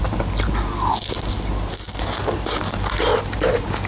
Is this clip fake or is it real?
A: real